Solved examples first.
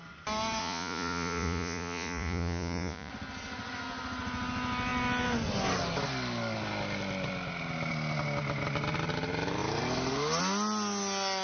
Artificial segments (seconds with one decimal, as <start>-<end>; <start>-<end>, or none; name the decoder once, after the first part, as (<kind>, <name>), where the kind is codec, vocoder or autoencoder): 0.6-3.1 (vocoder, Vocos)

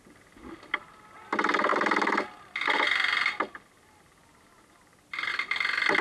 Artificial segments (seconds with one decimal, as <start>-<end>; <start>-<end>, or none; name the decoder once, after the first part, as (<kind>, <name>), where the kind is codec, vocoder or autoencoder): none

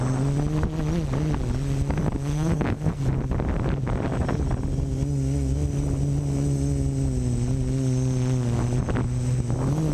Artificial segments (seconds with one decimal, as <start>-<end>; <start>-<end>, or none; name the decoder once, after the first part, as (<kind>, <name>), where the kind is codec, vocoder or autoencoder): 2.3-3.0 (codec, SNAC)

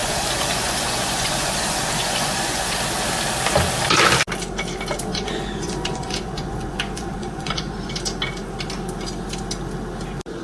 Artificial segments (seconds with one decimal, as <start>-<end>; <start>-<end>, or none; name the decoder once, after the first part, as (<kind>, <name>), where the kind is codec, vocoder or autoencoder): 0.0-2.8 (vocoder, Vocos); 5.1-7.9

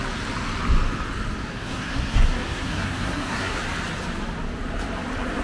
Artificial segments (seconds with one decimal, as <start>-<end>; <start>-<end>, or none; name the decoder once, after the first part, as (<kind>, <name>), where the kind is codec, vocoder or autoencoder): 1.5-3.6 (codec, SNAC)